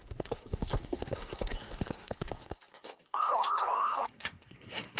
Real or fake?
fake